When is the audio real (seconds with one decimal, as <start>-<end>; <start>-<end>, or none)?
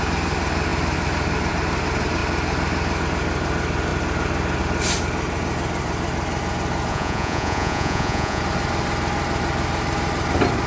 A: 0.0-6.9; 8.4-10.7